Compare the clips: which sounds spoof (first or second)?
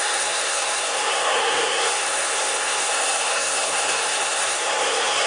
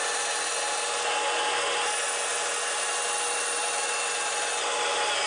first